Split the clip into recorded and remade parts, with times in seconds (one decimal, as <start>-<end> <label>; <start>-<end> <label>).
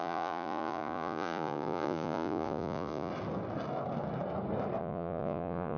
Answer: 0.0-3.1 remade; 3.1-4.8 recorded; 4.8-5.8 remade